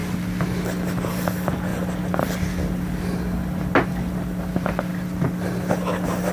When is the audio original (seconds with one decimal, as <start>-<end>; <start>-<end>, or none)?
0.0-4.9; 5.8-6.3